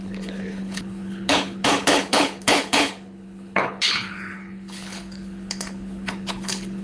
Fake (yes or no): yes